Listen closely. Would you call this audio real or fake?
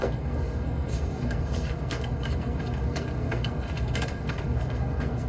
fake